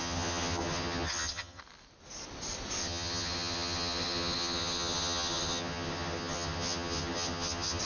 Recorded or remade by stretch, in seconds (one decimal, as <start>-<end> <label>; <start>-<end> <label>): 0.0-1.6 remade; 1.6-2.8 recorded; 2.8-7.8 remade

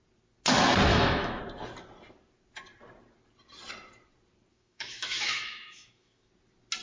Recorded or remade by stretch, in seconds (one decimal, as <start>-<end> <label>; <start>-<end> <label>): 0.0-0.9 recorded; 0.9-1.4 remade; 1.4-4.5 recorded; 4.5-6.3 remade; 6.3-6.8 recorded